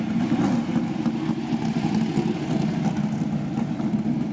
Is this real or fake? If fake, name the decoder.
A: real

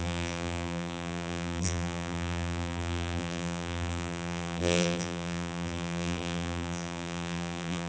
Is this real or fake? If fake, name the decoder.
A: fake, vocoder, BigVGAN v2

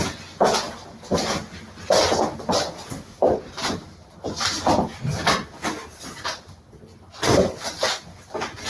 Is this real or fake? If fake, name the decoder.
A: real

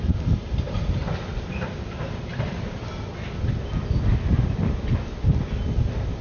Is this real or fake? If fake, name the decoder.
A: real